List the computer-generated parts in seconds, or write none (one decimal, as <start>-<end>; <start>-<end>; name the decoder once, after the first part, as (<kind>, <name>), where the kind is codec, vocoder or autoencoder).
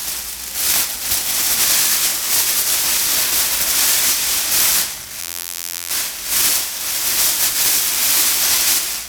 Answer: 5.2-5.9 (vocoder, BigVGAN v2)